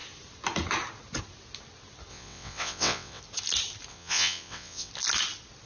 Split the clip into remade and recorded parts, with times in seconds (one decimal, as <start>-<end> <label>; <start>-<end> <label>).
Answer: 0.0-2.1 recorded; 2.1-3.2 remade; 3.2-3.9 recorded; 3.9-4.9 remade; 4.9-5.7 recorded